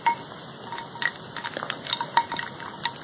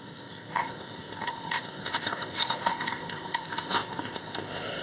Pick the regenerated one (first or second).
second